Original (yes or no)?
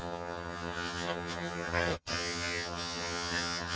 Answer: no